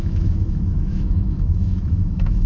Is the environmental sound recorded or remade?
remade